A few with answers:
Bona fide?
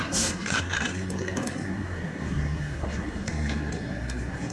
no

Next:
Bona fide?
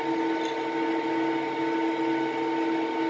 yes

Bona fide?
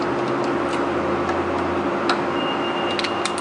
yes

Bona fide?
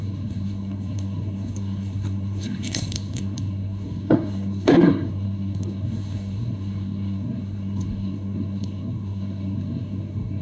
no